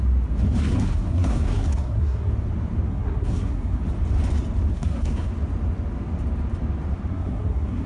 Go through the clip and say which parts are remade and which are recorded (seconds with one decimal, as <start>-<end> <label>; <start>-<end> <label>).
0.0-0.5 recorded; 0.5-2.3 remade; 2.3-2.9 recorded; 2.9-3.8 remade; 3.8-4.7 recorded; 4.7-5.3 remade; 5.3-7.1 recorded; 7.1-7.9 remade